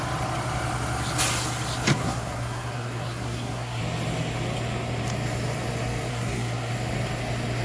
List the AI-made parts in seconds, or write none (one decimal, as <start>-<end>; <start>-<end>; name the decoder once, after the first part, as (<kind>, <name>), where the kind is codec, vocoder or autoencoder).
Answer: 1.9-3.8 (codec, SNAC); 6.1-6.7